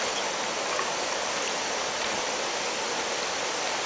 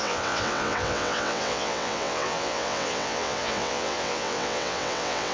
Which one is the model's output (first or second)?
second